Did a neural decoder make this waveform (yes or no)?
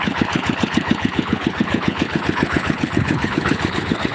yes